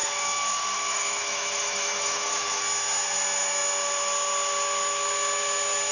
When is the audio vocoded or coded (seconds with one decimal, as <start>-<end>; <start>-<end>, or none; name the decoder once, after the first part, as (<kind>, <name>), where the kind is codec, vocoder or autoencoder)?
0.0-2.6 (autoencoder, DAC-VAE)